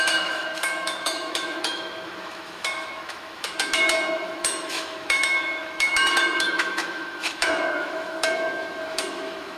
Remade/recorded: remade